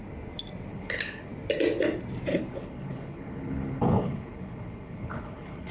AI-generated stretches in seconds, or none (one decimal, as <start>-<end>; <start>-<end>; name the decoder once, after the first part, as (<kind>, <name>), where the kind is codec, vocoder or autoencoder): 0.7-1.3 (codec, HILCodec); 2.3-5.7